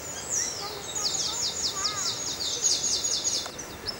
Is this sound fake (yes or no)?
no